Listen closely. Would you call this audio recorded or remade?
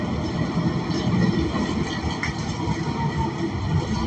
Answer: recorded